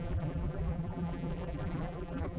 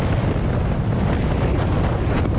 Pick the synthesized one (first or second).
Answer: first